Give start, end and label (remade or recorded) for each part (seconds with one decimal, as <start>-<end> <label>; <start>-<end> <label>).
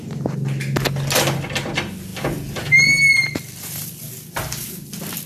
0.0-5.3 recorded